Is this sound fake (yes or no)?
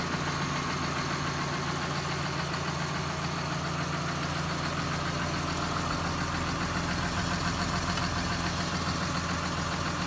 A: no